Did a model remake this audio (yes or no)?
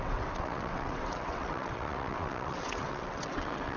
yes